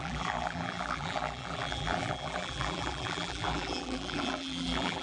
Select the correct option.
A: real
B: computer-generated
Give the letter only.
B